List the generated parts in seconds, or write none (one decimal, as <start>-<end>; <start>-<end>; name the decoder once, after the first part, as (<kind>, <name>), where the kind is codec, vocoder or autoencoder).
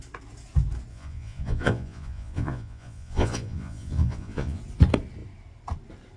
0.9-4.6 (vocoder, Vocos)